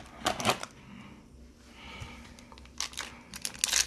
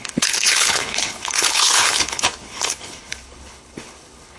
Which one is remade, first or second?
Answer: second